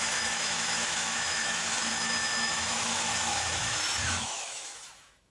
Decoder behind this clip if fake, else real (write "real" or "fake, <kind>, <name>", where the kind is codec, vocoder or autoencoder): fake, autoencoder, DAC-VAE